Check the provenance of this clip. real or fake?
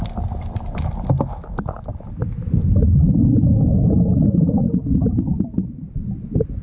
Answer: real